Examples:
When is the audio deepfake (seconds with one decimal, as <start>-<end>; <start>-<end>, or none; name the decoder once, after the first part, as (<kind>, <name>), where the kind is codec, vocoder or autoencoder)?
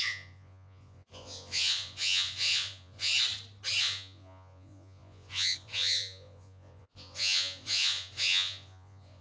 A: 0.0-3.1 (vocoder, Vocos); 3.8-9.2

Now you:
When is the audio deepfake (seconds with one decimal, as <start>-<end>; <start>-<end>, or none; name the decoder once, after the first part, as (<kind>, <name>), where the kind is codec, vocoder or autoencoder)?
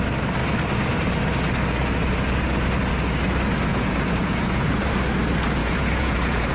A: 3.7-4.9 (vocoder, Vocos); 5.6-6.5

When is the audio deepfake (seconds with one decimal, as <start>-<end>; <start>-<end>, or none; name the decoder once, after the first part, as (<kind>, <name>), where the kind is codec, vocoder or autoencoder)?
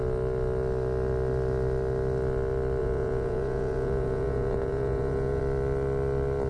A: 2.8-5.4 (vocoder, Vocos)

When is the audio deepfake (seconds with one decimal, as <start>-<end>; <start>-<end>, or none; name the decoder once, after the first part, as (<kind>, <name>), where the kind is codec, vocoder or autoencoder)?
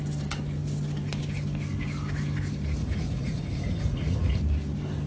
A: 2.8-4.4 (vocoder, Vocos)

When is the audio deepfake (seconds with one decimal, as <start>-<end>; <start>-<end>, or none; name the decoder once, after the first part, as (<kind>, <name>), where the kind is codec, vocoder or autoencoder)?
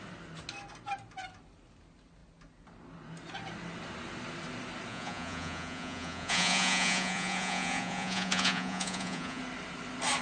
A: 4.9-9.4 (vocoder, Vocos)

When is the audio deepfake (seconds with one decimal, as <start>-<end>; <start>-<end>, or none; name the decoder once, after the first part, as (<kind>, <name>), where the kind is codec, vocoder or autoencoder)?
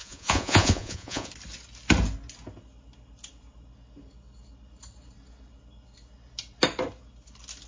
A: 0.0-1.3 (vocoder, Vocos)